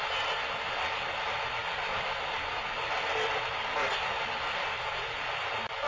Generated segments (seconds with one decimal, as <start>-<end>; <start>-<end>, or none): 1.6-3.3; 4.1-5.0